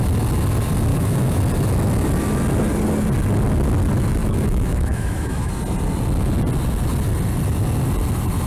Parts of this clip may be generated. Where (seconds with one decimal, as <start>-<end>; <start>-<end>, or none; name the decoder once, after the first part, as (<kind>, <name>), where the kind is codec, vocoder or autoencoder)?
0.9-1.4 (autoencoder, DAC-VAE); 4.2-5.5